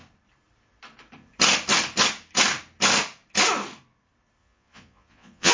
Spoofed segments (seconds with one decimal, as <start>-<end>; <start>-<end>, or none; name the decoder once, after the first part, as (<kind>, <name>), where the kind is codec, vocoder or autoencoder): 4.4-5.5 (vocoder, Vocos)